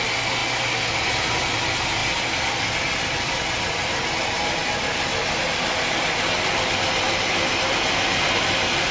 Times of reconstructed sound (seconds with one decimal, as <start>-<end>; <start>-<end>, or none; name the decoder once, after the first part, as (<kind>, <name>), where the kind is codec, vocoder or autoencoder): none